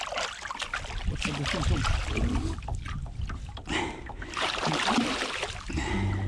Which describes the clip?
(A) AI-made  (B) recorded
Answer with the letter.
B